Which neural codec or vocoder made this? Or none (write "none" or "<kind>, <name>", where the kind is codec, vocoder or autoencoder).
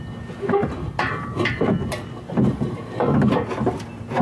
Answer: none